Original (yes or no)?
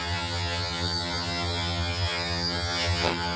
no